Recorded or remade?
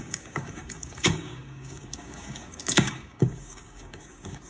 remade